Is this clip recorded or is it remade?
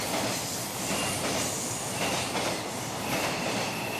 recorded